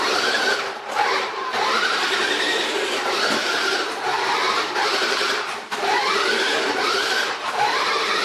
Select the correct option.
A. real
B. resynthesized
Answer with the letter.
B